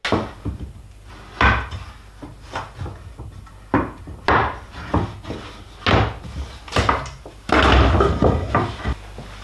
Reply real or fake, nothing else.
real